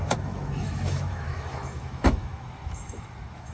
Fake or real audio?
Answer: fake